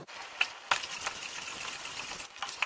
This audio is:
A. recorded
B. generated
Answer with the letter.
A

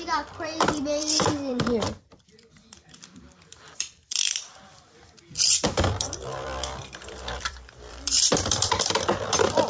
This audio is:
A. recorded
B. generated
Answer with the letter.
B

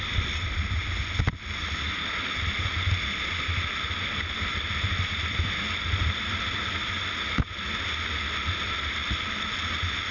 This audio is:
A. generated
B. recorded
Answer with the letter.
B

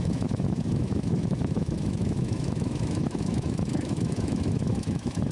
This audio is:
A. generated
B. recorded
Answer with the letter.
A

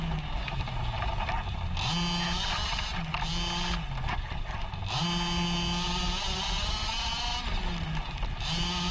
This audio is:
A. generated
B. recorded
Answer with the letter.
B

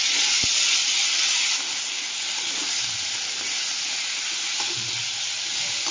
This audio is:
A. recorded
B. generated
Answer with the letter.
A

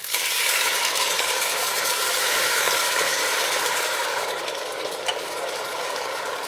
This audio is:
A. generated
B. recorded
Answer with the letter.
A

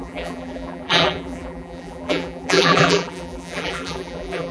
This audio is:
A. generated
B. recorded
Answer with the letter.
A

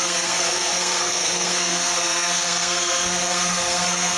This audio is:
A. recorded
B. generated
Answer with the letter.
B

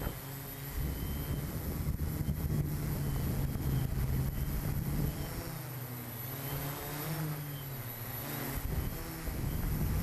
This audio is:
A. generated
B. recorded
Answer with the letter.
B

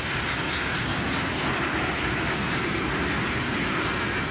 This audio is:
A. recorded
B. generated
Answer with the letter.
A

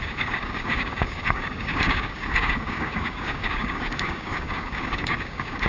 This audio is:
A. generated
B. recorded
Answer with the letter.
A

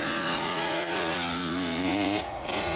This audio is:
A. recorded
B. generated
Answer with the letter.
B